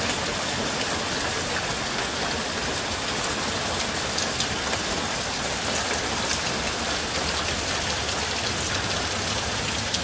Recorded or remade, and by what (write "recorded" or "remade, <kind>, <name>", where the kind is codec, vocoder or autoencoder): recorded